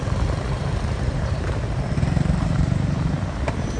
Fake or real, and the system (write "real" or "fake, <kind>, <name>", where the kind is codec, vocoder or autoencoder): fake, vocoder, BigVGAN v2